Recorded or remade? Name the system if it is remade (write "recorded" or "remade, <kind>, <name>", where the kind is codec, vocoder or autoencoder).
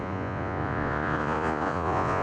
remade, vocoder, Vocos